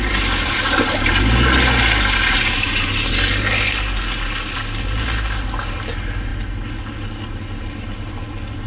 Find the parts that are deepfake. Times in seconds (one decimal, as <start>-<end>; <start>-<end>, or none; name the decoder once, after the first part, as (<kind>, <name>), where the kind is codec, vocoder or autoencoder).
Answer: none